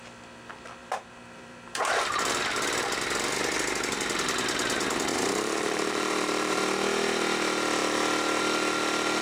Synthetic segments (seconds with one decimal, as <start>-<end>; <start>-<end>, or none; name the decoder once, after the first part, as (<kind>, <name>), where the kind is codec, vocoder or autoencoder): 0.8-2.3 (vocoder, BigVGAN v2); 5.1-6.6